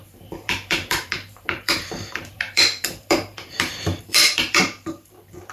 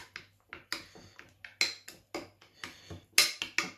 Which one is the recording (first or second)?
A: second